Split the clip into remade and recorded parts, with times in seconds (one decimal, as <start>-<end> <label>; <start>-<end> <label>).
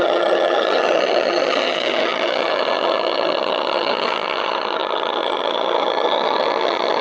0.0-7.0 remade